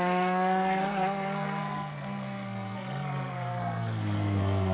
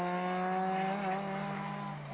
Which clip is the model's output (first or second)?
first